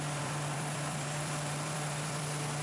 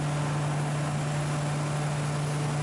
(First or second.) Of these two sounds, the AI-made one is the first